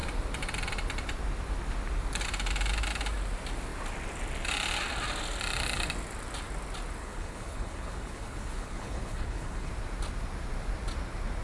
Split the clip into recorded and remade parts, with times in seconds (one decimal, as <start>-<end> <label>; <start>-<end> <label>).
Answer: 0.0-7.0 recorded; 7.0-9.7 remade; 9.7-11.4 recorded